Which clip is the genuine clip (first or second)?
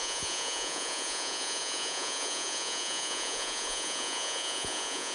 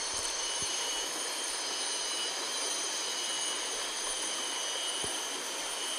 second